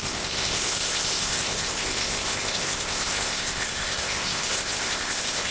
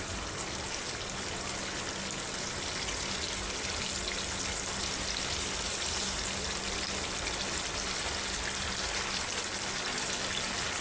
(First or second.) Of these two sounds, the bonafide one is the second